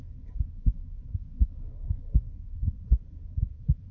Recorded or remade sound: remade